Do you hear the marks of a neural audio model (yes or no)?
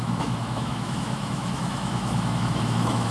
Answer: yes